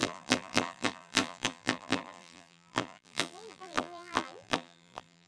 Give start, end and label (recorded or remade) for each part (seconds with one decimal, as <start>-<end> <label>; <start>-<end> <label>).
0.0-5.3 remade